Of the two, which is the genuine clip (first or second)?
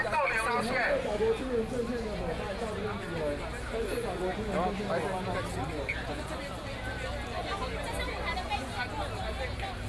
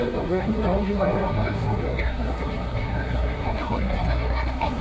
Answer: first